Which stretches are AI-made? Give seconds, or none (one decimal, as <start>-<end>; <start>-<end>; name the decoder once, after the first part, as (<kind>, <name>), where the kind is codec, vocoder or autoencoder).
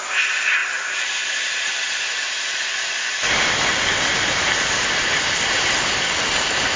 none